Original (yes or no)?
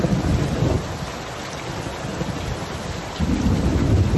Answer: yes